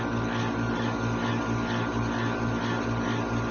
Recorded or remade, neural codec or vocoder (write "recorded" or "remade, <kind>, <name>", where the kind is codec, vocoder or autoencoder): recorded